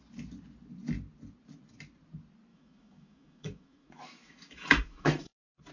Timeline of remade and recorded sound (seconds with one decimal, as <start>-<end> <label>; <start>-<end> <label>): 0.0-2.5 recorded; 2.5-5.7 remade